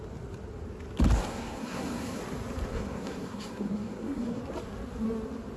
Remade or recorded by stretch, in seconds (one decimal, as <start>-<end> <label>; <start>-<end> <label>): 0.0-1.3 recorded; 1.3-2.2 remade; 2.2-2.7 recorded; 2.7-4.4 remade; 4.4-5.6 recorded